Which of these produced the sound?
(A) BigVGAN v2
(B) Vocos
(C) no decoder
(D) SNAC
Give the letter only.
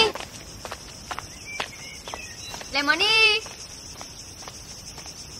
A